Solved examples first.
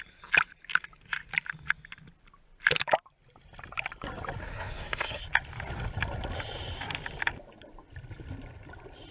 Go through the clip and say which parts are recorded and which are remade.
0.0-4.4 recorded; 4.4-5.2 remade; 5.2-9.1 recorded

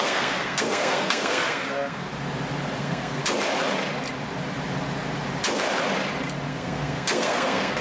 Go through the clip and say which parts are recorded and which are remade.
0.0-2.1 remade; 2.1-2.8 recorded; 2.8-3.2 remade; 3.2-6.5 recorded; 6.5-7.8 remade

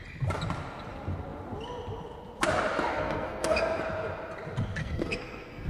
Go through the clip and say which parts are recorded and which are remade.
0.0-2.9 recorded; 2.9-3.8 remade; 3.8-4.8 recorded; 4.8-5.7 remade

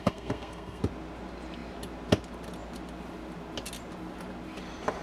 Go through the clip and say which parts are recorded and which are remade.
0.0-0.8 remade; 0.8-5.0 recorded

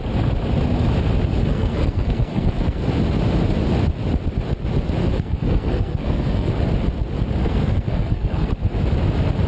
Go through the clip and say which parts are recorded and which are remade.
0.0-1.4 recorded; 1.4-2.8 remade; 2.8-5.0 recorded; 5.0-6.5 remade; 6.5-7.4 recorded; 7.4-8.5 remade; 8.5-9.5 recorded

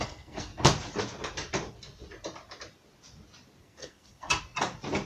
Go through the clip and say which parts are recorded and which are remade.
0.0-0.5 remade; 0.5-3.6 recorded; 3.6-4.3 remade; 4.3-5.1 recorded

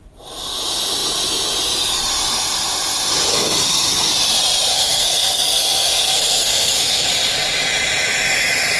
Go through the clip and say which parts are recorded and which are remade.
0.0-3.3 recorded; 3.3-4.1 remade; 4.1-4.7 recorded; 4.7-7.1 remade; 7.1-8.8 recorded

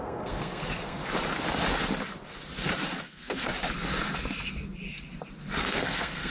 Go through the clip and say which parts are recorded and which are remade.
0.0-1.0 remade; 1.0-3.0 recorded; 3.0-3.5 remade; 3.5-5.6 recorded; 5.6-6.3 remade